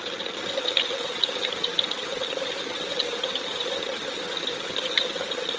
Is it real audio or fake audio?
fake